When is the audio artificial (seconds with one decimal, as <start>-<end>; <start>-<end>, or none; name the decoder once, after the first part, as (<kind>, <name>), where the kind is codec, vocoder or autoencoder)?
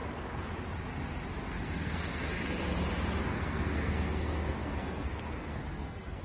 1.5-2.2 (codec, SNAC); 3.3-6.2